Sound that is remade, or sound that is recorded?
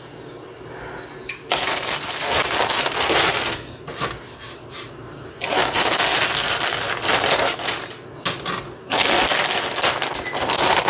recorded